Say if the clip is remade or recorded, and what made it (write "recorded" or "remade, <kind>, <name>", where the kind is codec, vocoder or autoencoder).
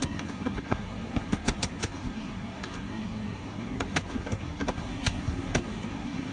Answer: remade, codec, SNAC